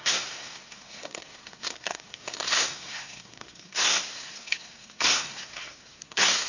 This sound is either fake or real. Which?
fake